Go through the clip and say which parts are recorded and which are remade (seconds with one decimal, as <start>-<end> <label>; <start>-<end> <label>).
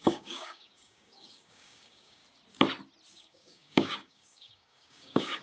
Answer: 0.0-2.2 remade; 2.2-3.1 recorded; 3.1-5.4 remade